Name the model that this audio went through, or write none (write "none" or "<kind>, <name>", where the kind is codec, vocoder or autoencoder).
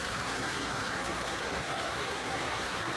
codec, SNAC